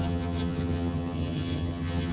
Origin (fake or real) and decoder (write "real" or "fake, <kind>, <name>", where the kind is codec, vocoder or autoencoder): fake, vocoder, HiFi-GAN